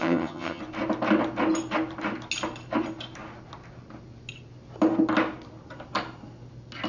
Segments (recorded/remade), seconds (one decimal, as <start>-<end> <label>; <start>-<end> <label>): 0.0-0.6 remade; 0.6-6.9 recorded